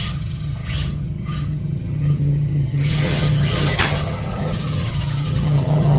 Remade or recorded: remade